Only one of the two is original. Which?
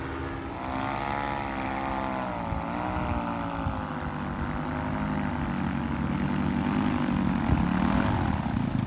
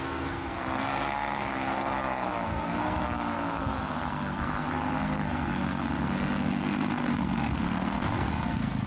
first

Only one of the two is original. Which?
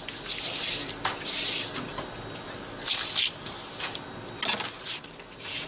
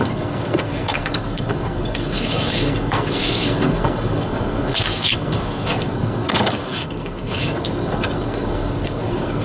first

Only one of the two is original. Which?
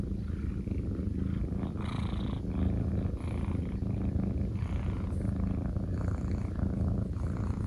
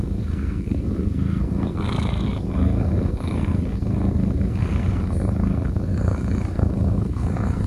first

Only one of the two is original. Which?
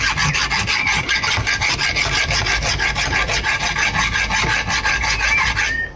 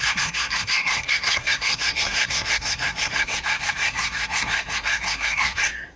first